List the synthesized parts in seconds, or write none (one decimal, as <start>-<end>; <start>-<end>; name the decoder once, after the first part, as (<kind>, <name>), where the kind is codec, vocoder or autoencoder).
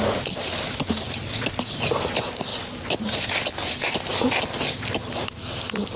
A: none